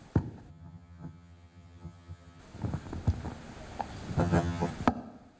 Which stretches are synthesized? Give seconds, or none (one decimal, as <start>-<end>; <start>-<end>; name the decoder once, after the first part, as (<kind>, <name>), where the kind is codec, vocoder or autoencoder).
0.5-2.4 (vocoder, HiFi-GAN); 4.2-4.7